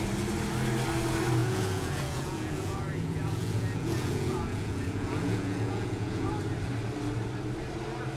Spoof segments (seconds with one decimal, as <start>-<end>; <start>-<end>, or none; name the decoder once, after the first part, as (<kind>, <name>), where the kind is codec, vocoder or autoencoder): 1.4-6.3 (vocoder, Vocos)